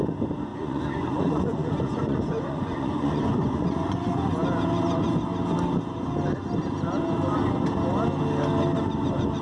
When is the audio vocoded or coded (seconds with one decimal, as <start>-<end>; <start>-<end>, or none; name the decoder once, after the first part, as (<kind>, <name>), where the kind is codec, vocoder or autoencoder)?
0.5-4.3 (vocoder, Vocos)